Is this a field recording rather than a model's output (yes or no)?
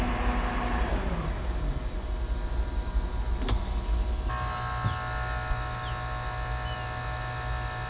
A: yes